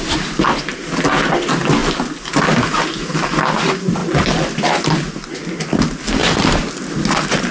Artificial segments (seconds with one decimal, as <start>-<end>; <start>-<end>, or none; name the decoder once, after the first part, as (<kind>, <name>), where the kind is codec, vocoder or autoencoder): none